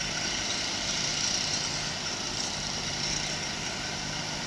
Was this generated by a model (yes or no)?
no